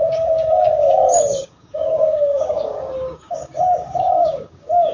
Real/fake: fake